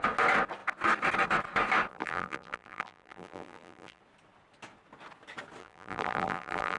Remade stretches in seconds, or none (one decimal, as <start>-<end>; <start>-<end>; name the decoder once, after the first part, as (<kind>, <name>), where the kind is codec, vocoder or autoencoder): 1.9-4.0 (vocoder, BigVGAN v2); 5.6-6.8